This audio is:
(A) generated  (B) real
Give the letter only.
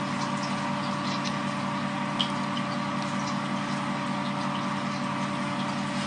B